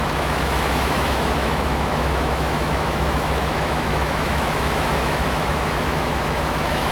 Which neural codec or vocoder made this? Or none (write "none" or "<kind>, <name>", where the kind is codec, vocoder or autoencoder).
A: autoencoder, DAC-VAE